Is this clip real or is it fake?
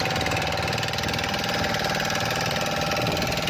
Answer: real